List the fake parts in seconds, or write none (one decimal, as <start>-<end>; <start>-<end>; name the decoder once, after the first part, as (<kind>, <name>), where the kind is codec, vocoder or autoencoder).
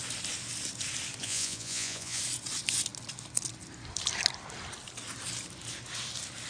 1.2-2.2 (vocoder, Vocos)